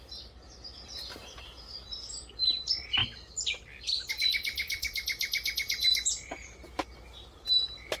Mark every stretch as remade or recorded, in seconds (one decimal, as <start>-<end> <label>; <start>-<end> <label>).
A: 0.0-8.0 recorded